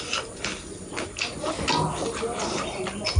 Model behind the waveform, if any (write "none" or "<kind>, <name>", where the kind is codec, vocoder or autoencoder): none